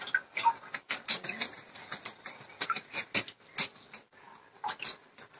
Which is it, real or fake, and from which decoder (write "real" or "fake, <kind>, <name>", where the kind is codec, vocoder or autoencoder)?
real